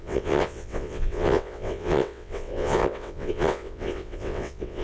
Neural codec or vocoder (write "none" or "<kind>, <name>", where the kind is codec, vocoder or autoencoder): vocoder, WaveNeXt